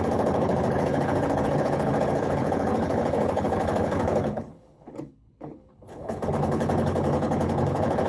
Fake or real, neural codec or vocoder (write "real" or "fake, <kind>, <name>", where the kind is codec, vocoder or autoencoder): fake, codec, HILCodec